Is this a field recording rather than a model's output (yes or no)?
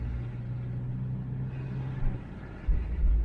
yes